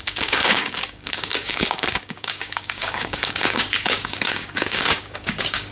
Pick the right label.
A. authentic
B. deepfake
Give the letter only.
B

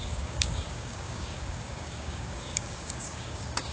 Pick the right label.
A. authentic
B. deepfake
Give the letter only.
B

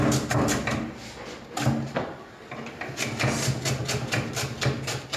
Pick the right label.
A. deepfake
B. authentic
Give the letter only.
B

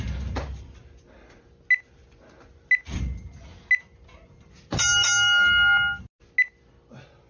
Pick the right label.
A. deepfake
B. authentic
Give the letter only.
B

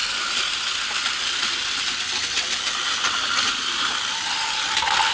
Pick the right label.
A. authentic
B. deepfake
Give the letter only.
A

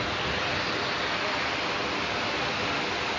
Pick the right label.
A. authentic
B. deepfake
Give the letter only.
A